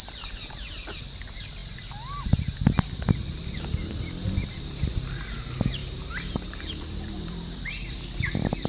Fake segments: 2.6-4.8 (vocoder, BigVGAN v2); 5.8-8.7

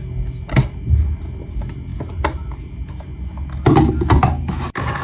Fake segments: none

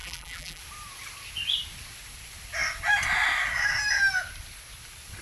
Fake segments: 0.0-0.6 (vocoder, BigVGAN v2)

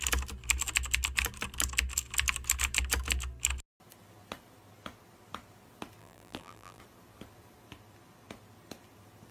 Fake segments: 6.0-6.8 (vocoder, BigVGAN v2)

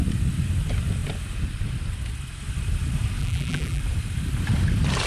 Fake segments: 3.2-3.8 (vocoder, BigVGAN v2)

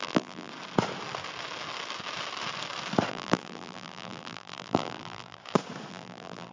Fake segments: 0.0-0.5 (vocoder, BigVGAN v2); 3.1-5.4; 5.9-6.5